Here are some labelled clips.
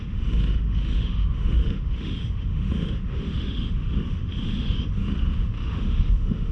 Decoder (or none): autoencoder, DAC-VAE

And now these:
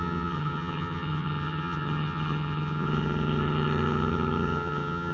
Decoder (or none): vocoder, HiFi-GAN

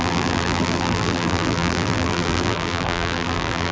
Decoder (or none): vocoder, BigVGAN v2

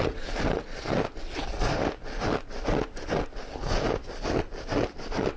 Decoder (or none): none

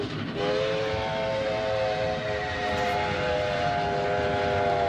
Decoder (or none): none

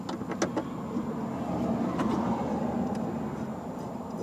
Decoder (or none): none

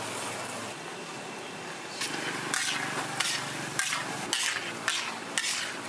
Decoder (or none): none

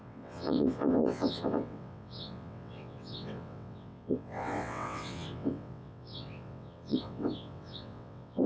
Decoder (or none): vocoder, WaveNeXt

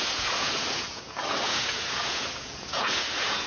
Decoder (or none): vocoder, Vocos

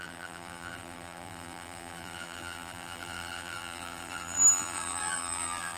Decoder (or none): vocoder, BigVGAN v2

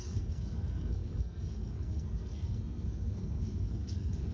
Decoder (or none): codec, SNAC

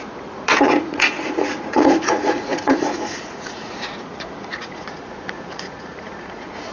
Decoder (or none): vocoder, Vocos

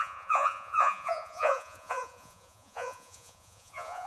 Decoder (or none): vocoder, Vocos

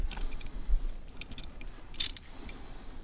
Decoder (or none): none